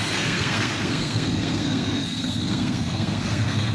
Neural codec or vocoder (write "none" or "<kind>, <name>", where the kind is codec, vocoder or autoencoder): codec, SNAC